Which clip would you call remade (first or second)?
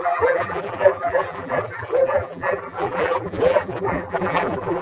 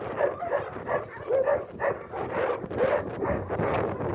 first